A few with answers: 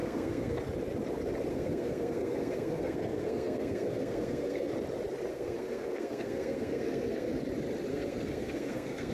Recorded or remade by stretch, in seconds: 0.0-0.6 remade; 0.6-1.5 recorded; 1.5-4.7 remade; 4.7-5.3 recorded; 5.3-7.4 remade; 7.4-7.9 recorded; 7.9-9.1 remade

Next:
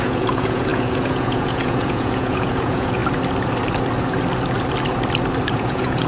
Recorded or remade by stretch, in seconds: 0.0-3.0 remade; 3.0-5.5 recorded; 5.5-6.1 remade

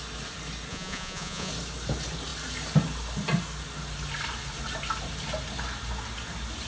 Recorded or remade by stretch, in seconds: 0.0-0.7 recorded; 0.7-1.5 remade; 1.5-6.7 recorded

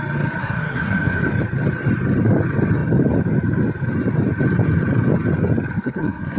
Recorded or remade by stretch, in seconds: 0.0-0.4 recorded; 0.4-1.3 remade; 1.3-5.7 recorded; 5.7-6.4 remade

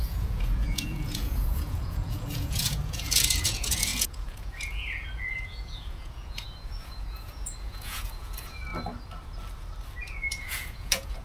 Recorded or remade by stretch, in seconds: 0.0-8.7 remade; 8.7-10.0 recorded; 10.0-11.2 remade